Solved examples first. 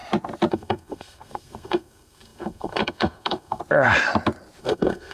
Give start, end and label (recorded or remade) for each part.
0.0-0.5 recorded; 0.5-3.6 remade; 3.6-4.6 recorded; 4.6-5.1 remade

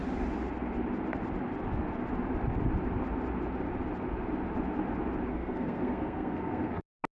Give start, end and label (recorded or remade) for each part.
0.0-5.3 recorded; 5.3-6.8 remade; 6.8-7.2 recorded

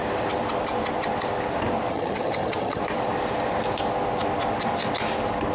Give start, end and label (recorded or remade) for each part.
0.0-1.9 recorded; 1.9-2.8 remade; 2.8-5.5 recorded

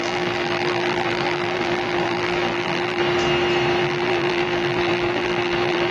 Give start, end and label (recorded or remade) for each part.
0.0-3.0 remade; 3.0-3.8 recorded; 3.8-5.9 remade